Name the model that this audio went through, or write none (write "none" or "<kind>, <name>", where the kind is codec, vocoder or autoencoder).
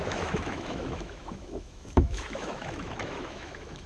autoencoder, DAC-VAE